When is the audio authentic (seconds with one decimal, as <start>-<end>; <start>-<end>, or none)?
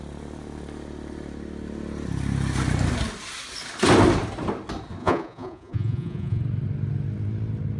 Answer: 0.0-5.0; 6.4-7.8